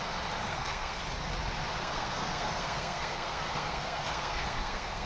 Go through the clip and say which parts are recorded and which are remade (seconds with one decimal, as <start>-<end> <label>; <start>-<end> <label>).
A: 0.0-0.5 recorded; 0.5-1.0 remade; 1.0-1.8 recorded; 1.8-5.1 remade